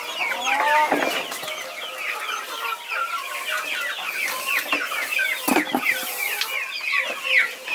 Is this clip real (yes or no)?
yes